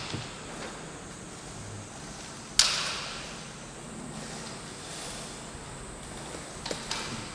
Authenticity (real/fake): real